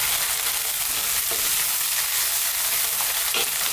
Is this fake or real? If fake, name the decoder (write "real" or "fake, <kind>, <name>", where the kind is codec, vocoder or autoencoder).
real